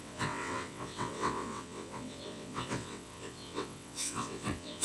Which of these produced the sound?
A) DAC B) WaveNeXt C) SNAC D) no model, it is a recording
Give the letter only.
B